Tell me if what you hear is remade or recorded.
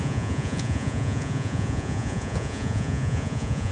remade